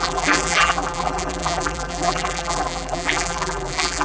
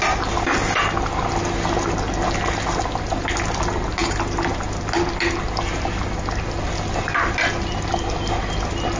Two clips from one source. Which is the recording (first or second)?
second